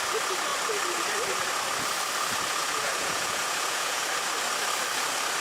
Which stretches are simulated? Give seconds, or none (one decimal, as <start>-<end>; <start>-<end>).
2.6-4.0